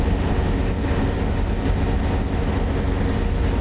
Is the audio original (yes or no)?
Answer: yes